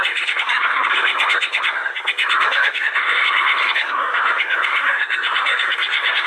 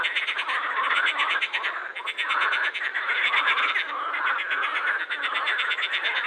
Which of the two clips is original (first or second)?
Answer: second